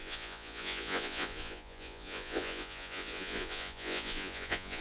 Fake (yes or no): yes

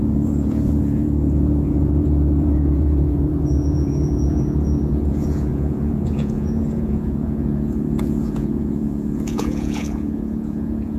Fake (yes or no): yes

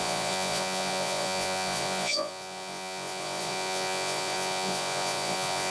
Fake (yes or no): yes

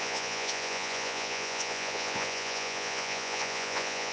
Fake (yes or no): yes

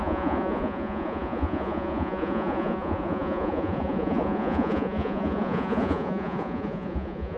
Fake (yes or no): yes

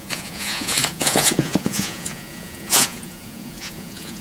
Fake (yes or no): yes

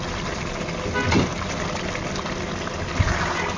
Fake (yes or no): no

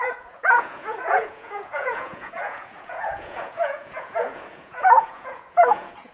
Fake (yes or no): yes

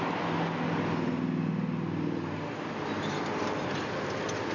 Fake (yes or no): no